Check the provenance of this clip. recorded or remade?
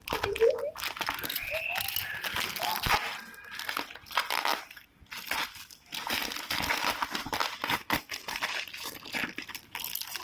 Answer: recorded